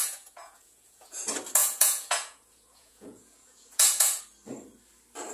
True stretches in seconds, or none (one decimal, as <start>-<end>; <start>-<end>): 1.2-1.6; 4.2-5.3